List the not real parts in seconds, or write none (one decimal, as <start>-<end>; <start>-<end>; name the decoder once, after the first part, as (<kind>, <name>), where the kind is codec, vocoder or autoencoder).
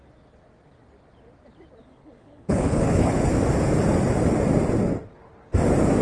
1.8-3.3 (codec, HILCodec)